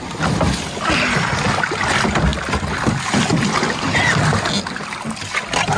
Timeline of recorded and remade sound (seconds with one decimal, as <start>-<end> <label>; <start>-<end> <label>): 0.0-5.8 recorded